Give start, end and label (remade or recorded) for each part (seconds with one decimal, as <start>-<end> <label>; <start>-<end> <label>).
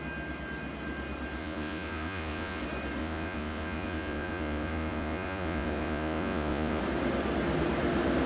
0.0-1.4 recorded; 1.4-2.6 remade; 2.6-3.0 recorded; 3.0-6.8 remade; 6.8-8.3 recorded